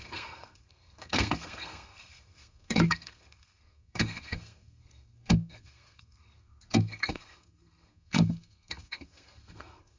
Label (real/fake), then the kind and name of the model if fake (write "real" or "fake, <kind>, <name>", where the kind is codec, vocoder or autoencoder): fake, codec, SNAC